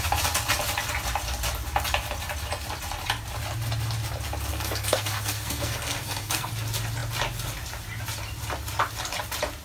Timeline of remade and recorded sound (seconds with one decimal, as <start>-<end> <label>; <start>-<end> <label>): 0.0-4.5 recorded; 4.5-6.5 remade; 6.5-9.6 recorded